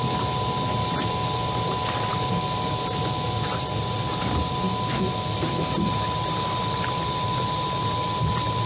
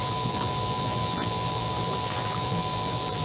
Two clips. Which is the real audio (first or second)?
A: first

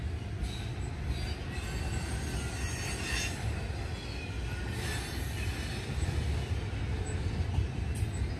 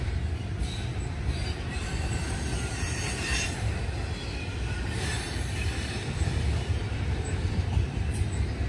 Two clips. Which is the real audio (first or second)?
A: first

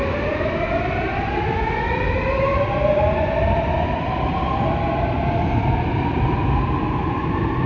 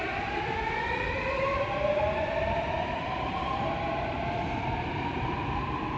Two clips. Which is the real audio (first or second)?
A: first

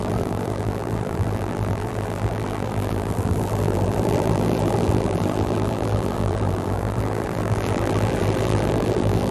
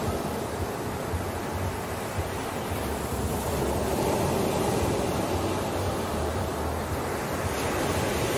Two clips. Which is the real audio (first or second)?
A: second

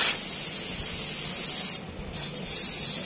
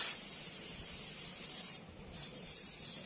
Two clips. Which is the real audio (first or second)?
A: first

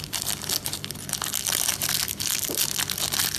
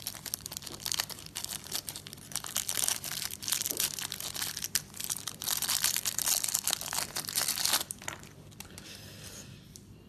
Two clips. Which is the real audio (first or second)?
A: first